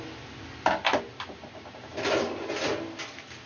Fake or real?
real